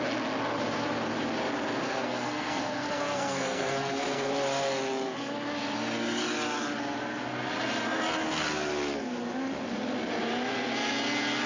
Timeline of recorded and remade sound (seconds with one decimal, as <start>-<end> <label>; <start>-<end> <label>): 0.0-1.8 recorded; 1.8-4.3 remade; 4.3-11.5 recorded